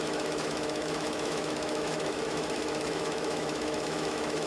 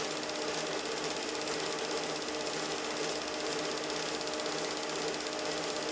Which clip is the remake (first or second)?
first